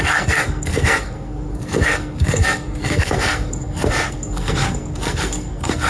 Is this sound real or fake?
fake